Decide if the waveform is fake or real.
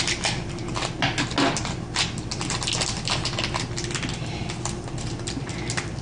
real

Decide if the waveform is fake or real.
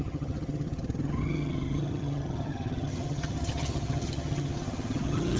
fake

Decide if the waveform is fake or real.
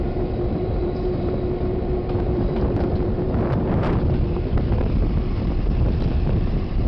fake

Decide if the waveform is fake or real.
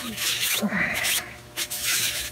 fake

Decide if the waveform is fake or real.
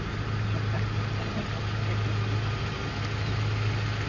real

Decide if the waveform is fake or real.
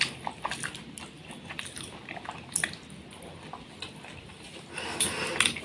real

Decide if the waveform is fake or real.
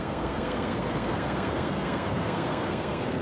fake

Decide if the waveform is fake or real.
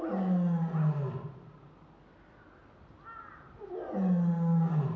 real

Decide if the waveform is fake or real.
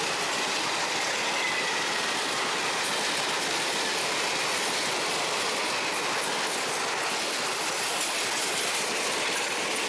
real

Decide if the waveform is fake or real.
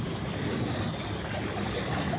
real